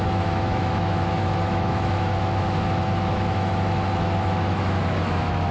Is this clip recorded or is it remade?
remade